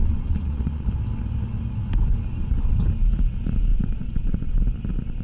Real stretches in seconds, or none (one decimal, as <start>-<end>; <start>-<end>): 0.9-3.7; 4.5-5.2